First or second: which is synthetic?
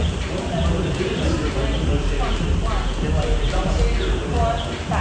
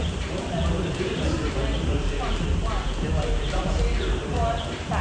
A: second